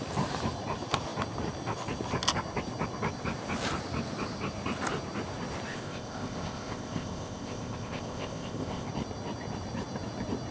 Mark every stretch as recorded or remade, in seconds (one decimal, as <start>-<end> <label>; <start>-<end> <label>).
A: 0.0-5.7 recorded; 5.7-8.9 remade; 8.9-10.5 recorded